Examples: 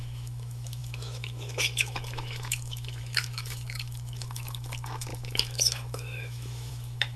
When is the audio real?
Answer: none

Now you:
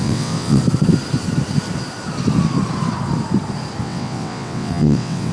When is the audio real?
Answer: 0.6-3.8